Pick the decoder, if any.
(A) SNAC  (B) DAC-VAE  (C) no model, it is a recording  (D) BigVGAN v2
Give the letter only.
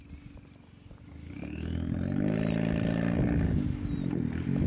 C